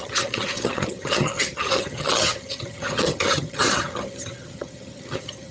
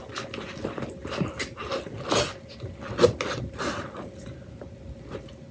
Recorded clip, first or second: second